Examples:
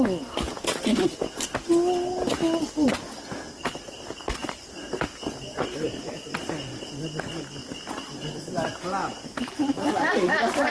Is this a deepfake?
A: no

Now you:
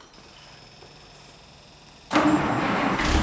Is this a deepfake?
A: no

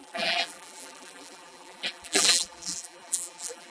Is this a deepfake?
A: yes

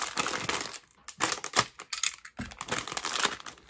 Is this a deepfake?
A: no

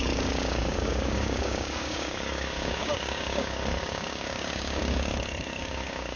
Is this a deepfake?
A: yes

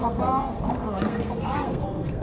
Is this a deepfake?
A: yes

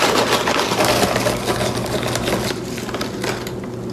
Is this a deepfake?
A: no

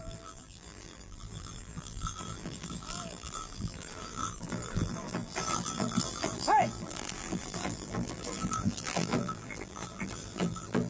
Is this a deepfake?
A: yes